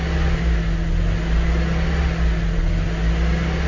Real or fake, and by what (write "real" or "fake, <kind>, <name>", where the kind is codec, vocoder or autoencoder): real